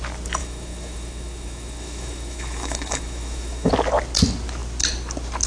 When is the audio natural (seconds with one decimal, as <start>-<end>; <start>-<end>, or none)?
0.0-0.4; 3.7-5.5